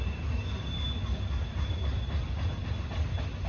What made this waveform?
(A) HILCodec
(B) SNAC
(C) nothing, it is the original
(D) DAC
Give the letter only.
C